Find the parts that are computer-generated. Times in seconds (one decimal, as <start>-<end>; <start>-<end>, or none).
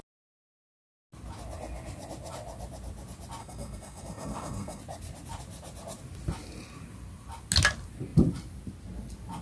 3.4-4.8